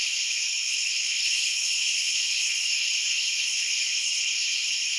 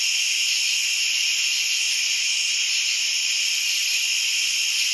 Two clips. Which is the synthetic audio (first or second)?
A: first